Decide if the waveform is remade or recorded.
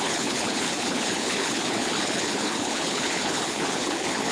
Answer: remade